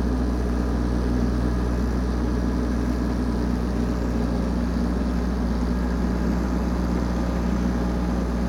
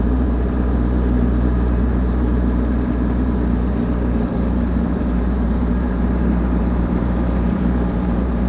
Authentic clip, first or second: first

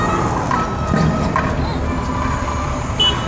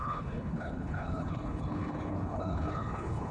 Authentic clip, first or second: first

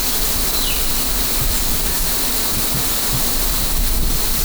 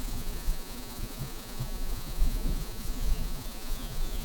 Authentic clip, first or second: first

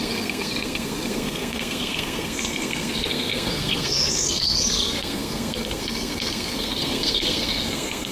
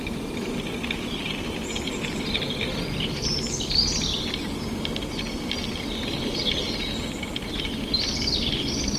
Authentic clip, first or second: second